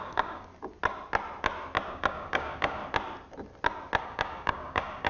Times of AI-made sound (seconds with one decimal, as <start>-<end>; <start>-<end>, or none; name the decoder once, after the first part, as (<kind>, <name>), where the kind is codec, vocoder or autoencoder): 0.0-0.5 (codec, DAC); 1.9-2.8; 4.0-5.1